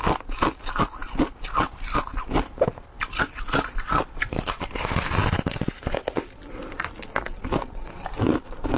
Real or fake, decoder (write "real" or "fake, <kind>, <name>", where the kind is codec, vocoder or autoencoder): fake, vocoder, BigVGAN v2